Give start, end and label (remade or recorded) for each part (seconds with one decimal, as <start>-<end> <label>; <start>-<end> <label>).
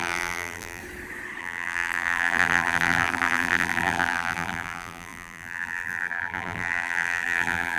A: 0.0-0.8 remade; 0.8-1.4 recorded; 1.4-7.8 remade